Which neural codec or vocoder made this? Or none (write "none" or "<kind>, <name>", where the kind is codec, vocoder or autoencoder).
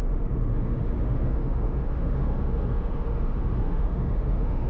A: autoencoder, DAC-VAE